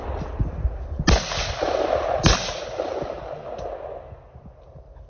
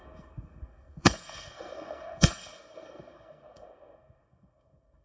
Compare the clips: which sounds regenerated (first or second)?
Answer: second